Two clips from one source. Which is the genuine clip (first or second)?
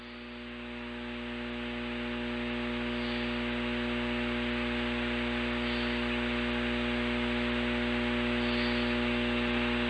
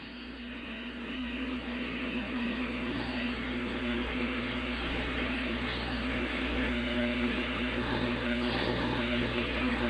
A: first